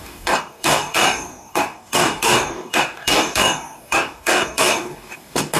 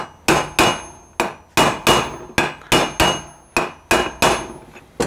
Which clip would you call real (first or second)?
second